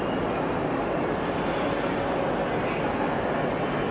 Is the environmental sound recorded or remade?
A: recorded